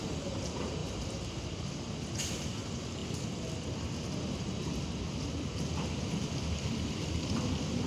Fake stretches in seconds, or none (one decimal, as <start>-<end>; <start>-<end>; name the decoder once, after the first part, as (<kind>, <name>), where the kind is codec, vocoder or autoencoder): 0.8-1.9 (vocoder, BigVGAN v2)